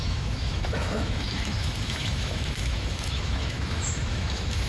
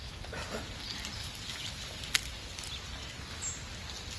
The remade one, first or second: first